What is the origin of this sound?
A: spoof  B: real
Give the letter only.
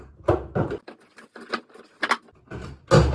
B